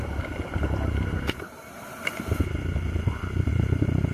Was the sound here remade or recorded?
recorded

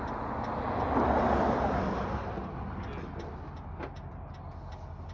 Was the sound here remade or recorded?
recorded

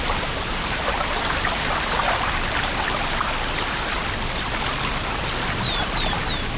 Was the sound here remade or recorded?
recorded